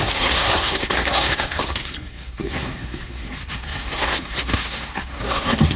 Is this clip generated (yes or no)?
yes